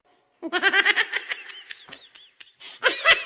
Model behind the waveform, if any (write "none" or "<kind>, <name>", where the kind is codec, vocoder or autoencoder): none